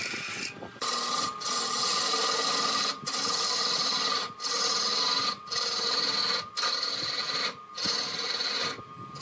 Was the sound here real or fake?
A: real